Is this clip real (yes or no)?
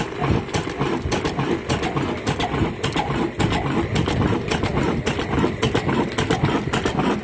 yes